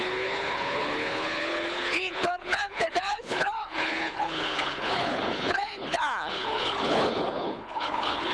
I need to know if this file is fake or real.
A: fake